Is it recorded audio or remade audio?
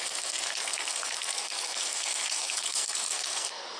remade